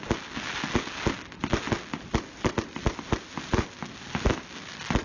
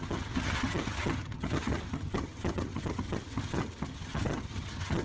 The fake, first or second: second